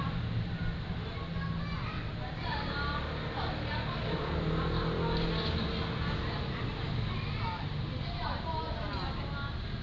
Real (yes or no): yes